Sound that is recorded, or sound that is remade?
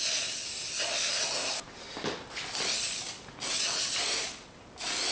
recorded